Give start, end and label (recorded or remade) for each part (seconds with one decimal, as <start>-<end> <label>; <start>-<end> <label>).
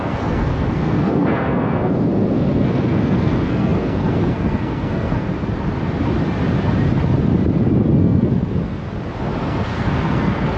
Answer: 0.0-5.3 remade; 5.3-8.0 recorded; 8.0-8.8 remade; 8.8-9.4 recorded; 9.4-10.6 remade